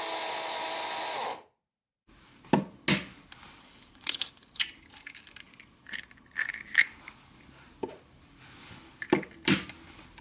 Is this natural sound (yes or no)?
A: yes